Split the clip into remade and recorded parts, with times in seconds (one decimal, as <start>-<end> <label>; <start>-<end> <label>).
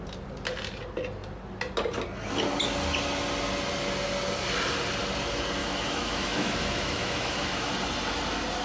0.0-5.6 recorded; 5.6-7.7 remade; 7.7-8.6 recorded